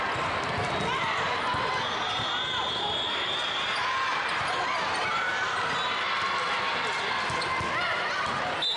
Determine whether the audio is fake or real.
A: real